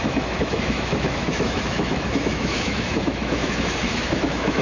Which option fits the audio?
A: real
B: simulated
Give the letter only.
B